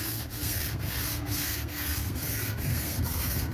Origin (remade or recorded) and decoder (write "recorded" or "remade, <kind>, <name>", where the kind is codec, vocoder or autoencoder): remade, codec, SNAC